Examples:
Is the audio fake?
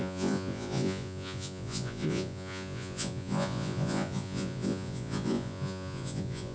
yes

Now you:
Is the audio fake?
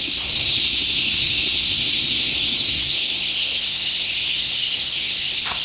yes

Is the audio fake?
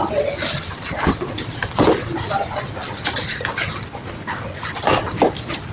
no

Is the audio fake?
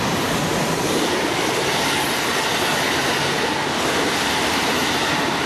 no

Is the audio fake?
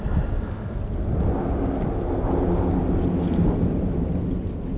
no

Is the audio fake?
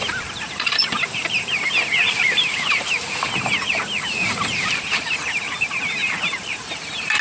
yes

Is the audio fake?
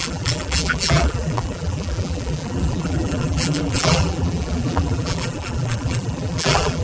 yes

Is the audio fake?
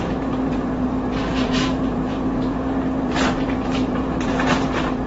yes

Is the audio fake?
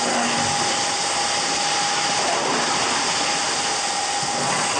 no